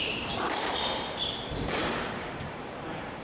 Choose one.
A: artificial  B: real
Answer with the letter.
A